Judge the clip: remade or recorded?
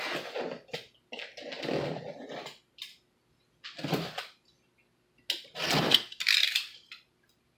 recorded